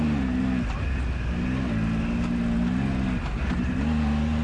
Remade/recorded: recorded